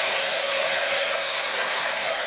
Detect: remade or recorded remade